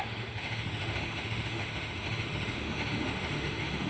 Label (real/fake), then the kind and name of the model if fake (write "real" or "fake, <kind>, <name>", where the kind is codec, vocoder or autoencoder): fake, autoencoder, DAC-VAE